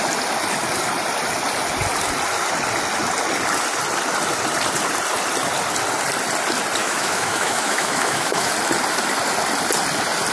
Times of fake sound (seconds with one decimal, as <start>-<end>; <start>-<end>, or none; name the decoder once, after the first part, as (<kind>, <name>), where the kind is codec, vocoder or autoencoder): 6.8-8.5 (autoencoder, DAC-VAE)